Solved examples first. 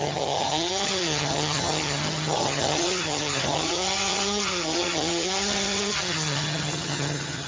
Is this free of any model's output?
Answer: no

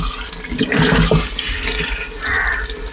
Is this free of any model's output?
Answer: yes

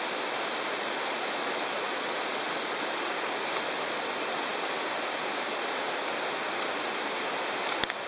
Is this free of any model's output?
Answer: yes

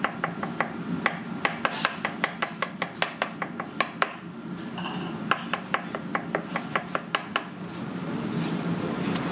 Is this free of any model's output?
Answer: yes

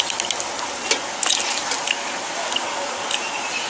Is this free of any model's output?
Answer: yes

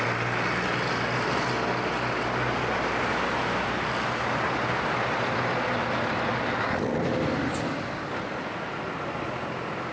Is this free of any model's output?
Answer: yes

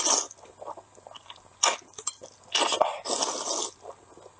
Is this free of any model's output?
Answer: yes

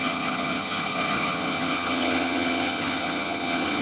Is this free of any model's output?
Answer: no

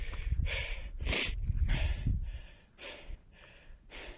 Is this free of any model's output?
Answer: yes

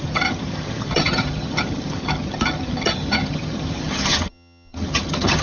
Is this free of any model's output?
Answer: no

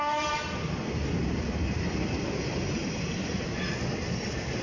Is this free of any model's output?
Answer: yes